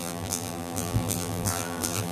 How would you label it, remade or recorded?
remade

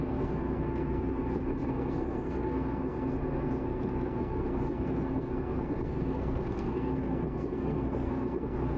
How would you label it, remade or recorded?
remade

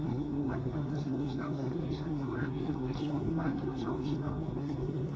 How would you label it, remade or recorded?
remade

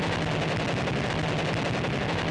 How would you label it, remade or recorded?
recorded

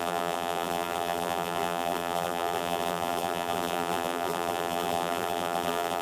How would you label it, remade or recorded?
remade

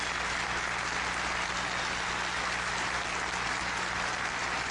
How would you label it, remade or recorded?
recorded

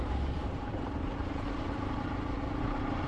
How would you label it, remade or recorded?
remade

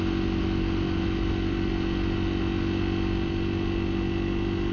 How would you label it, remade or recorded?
recorded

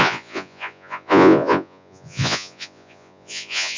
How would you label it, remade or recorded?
remade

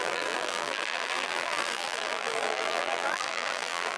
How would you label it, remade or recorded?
remade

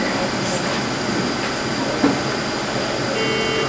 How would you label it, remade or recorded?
recorded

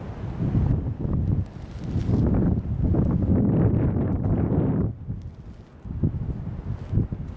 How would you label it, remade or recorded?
recorded